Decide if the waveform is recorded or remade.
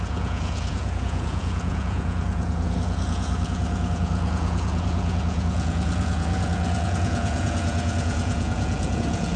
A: remade